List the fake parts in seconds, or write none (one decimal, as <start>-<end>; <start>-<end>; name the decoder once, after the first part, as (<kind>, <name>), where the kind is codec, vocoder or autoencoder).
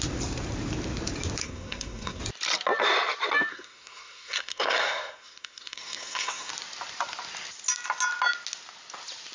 1.4-2.2 (codec, SNAC); 3.5-6.5